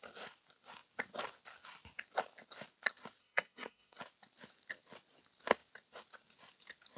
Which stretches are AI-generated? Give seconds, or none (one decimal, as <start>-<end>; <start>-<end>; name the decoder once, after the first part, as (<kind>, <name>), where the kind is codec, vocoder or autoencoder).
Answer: 3.2-4.0 (codec, SNAC)